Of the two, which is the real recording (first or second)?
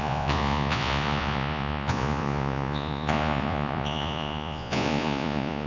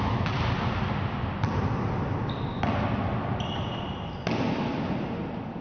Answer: second